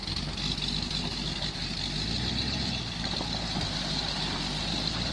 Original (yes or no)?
yes